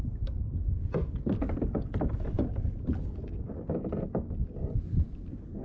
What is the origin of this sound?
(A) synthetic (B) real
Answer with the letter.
B